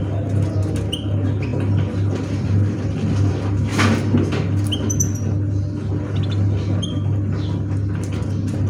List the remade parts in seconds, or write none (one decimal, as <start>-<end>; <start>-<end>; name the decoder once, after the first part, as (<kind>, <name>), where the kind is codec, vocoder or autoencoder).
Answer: 1.5-3.3 (vocoder, BigVGAN v2)